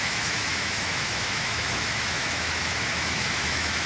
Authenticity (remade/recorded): remade